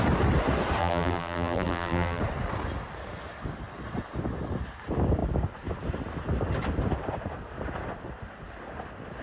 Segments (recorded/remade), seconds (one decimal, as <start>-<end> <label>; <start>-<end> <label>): 0.0-0.8 recorded; 0.8-2.2 remade; 2.2-9.2 recorded